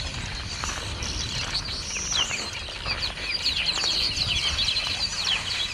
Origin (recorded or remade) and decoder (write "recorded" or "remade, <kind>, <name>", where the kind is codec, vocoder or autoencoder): recorded